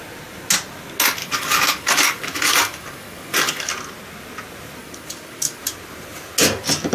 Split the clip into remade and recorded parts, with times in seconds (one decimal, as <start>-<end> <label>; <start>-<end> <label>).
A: 0.0-1.2 recorded; 1.2-3.7 remade; 3.7-4.8 recorded; 4.8-5.6 remade; 5.6-6.9 recorded